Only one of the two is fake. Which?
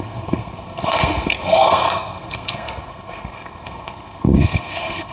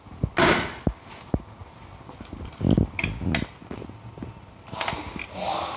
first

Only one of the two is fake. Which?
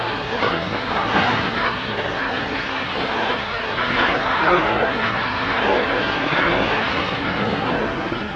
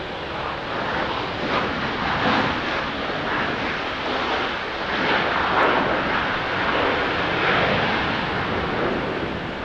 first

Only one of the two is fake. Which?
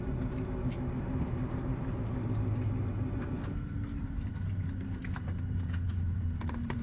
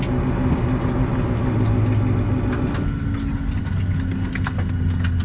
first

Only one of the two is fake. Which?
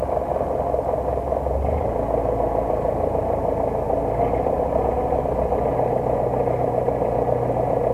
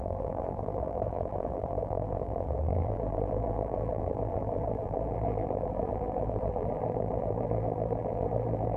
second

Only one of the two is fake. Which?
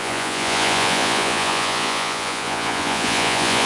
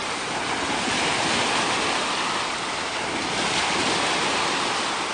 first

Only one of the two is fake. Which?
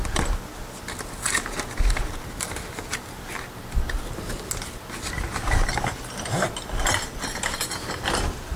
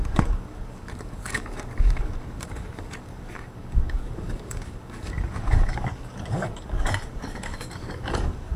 second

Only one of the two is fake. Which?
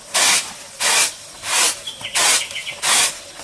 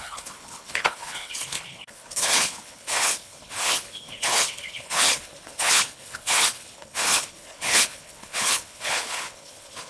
second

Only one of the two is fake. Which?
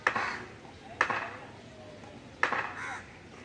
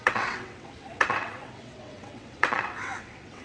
second